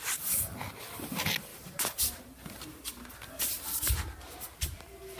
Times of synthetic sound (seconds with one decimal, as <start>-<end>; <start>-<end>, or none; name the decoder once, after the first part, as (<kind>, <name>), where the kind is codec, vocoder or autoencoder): none

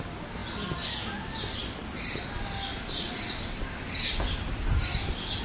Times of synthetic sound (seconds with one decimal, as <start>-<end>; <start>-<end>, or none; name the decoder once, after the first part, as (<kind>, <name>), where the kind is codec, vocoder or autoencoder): none

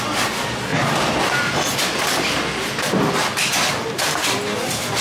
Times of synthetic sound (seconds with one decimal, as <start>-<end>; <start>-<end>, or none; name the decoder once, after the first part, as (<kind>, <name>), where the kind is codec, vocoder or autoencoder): none

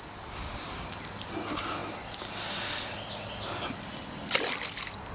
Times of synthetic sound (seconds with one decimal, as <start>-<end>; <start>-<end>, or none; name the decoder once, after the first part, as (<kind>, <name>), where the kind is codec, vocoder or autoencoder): none

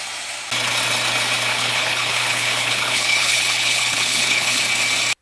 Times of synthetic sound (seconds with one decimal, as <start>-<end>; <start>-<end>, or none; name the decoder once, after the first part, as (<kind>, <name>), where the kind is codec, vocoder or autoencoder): 1.5-4.6 (codec, HILCodec)

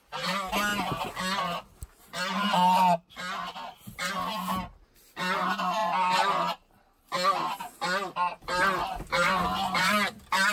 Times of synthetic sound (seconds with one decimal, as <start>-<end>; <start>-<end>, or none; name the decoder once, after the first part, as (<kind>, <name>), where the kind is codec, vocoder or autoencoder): none